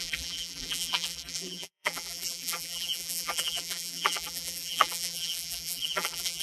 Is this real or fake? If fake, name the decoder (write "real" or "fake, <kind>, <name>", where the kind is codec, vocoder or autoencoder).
fake, vocoder, BigVGAN v2